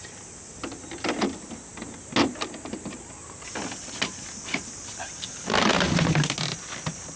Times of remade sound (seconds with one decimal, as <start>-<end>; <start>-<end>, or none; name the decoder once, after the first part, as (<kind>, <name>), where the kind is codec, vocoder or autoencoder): none